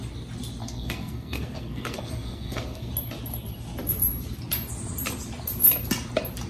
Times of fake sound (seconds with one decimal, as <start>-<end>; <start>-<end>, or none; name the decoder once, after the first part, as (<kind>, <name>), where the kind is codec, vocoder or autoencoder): 0.6-2.9 (codec, SNAC)